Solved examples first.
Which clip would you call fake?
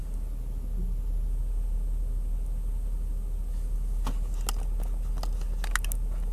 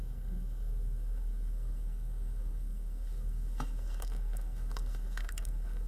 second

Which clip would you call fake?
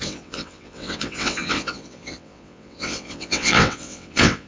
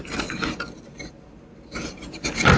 first